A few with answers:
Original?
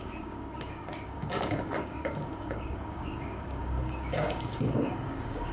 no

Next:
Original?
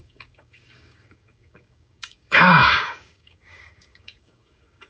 no